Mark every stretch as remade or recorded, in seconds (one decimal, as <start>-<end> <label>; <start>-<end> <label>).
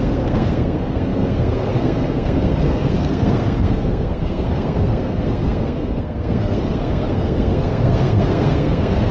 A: 0.0-9.1 remade